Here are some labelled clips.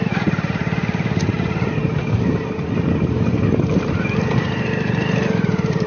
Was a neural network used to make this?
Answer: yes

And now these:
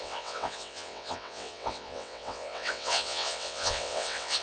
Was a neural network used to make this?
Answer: yes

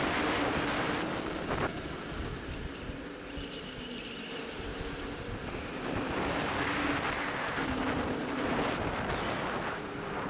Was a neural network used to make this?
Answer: no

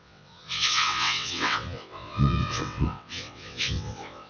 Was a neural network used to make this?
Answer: yes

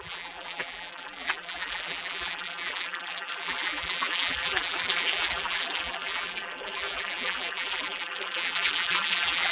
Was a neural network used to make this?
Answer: yes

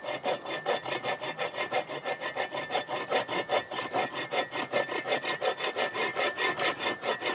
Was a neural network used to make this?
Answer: no